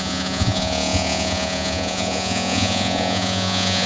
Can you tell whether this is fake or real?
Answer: fake